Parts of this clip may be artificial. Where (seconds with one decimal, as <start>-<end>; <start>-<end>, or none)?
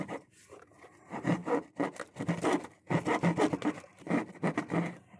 0.0-1.4; 4.5-5.2